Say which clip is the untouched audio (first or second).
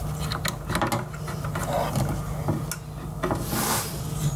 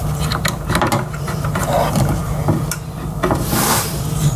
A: first